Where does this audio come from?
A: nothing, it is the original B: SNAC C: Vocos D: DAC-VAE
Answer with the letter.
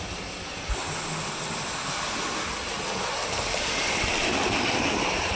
A